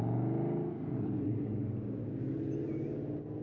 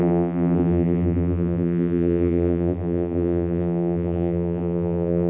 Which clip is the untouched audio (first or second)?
first